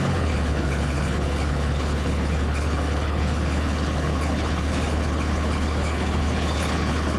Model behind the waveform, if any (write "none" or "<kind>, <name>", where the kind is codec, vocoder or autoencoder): codec, HILCodec